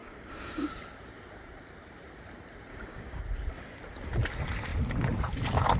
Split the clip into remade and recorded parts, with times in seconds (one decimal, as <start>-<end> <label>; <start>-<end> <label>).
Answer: 0.0-0.7 remade; 0.7-2.7 recorded; 2.7-3.2 remade; 3.2-5.8 recorded